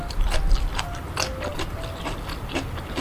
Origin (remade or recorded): recorded